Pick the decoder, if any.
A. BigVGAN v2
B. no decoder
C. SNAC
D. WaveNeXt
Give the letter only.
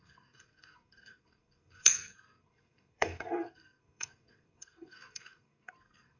C